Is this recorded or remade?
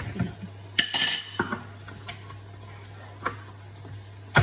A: recorded